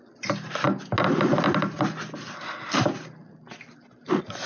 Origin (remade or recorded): recorded